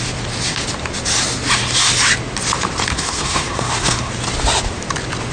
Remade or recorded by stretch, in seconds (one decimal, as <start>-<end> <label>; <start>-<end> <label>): 0.0-2.9 recorded; 2.9-4.1 remade; 4.1-5.3 recorded